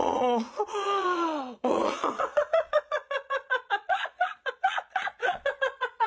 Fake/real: fake